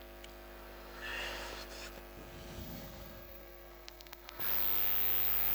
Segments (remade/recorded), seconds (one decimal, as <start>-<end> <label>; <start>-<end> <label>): 0.0-2.6 recorded; 2.6-4.4 remade; 4.4-5.5 recorded